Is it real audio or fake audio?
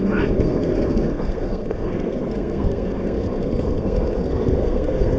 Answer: fake